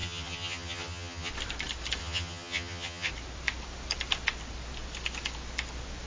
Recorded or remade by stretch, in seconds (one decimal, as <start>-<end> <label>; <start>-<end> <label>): 0.0-1.3 remade; 1.3-2.0 recorded; 2.0-3.1 remade; 3.1-6.1 recorded

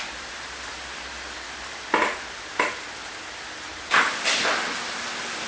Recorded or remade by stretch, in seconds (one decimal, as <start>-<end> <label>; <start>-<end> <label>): 0.0-5.5 recorded

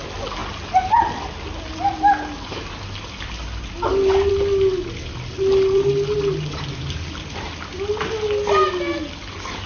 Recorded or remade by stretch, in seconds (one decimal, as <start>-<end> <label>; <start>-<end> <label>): 0.0-9.7 recorded

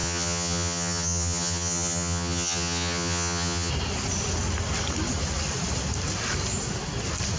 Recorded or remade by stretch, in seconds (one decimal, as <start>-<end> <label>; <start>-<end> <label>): 0.0-3.7 remade; 3.7-7.4 recorded